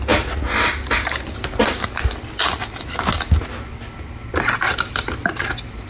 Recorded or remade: recorded